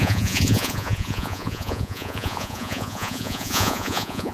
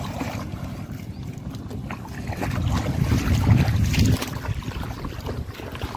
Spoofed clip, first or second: first